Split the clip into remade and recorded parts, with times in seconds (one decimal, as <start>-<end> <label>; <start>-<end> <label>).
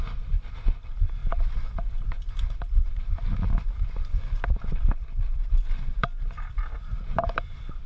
0.0-7.9 recorded